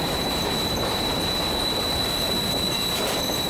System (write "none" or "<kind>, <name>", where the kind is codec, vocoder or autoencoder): vocoder, BigVGAN v2